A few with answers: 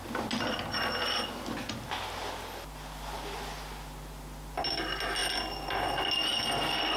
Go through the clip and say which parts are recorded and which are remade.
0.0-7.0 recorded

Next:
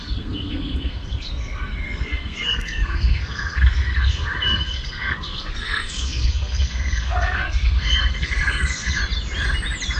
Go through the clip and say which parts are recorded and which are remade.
0.0-9.0 remade; 9.0-10.0 recorded